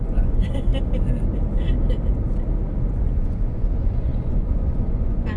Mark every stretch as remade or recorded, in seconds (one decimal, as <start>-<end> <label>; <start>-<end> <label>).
0.0-0.7 remade; 0.7-2.9 recorded; 2.9-5.4 remade